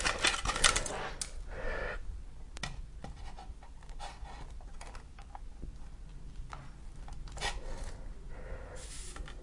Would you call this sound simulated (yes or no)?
no